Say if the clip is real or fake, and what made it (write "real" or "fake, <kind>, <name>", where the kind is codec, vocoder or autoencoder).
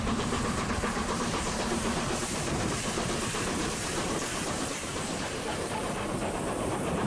fake, vocoder, BigVGAN v2